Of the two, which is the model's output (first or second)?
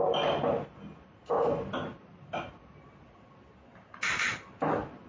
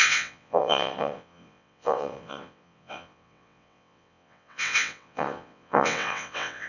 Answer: second